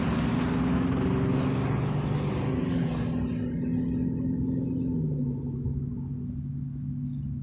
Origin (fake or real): real